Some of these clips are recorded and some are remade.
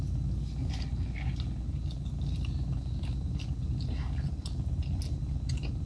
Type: recorded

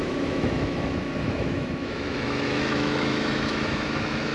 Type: remade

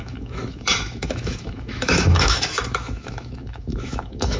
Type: remade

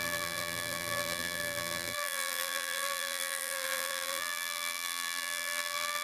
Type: remade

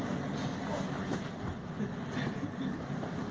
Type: recorded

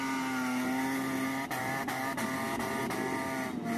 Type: recorded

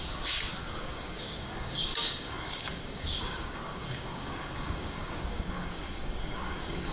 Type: remade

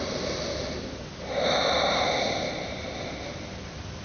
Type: recorded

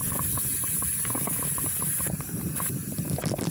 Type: recorded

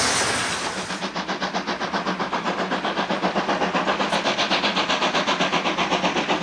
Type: recorded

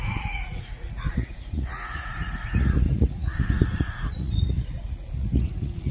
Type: remade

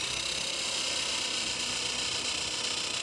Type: recorded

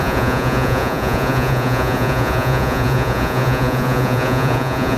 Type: remade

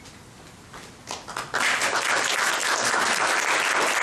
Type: recorded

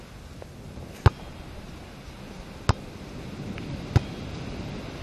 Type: recorded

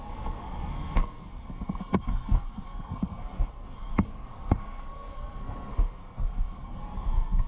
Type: remade